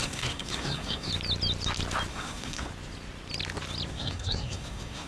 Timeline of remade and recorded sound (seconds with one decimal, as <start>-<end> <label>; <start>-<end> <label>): 0.0-1.1 remade; 1.1-2.1 recorded; 2.1-2.7 remade; 2.7-3.9 recorded; 3.9-5.1 remade